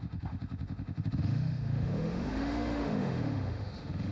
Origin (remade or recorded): remade